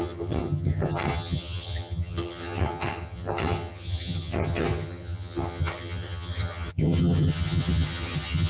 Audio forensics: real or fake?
fake